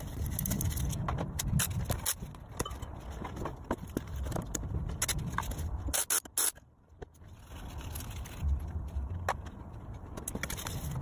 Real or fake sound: real